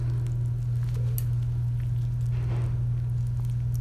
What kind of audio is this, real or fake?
real